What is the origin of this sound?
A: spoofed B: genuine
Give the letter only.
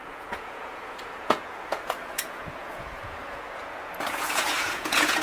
A